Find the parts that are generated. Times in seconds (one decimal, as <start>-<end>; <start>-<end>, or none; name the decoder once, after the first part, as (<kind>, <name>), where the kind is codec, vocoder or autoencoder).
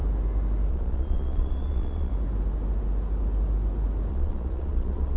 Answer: 0.7-2.1 (vocoder, Vocos); 4.1-5.2